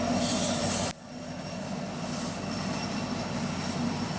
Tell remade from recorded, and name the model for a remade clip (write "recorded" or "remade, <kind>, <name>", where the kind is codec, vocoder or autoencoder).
recorded